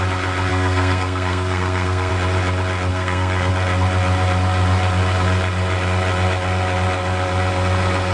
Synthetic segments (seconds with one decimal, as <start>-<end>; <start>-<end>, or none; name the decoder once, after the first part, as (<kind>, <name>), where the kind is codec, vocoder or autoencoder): 0.5-2.1 (codec, SNAC); 2.9-3.5